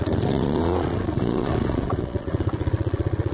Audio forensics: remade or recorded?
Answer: remade